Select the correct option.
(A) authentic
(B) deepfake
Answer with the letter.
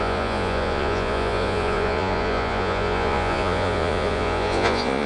B